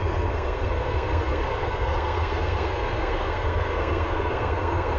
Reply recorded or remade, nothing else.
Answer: remade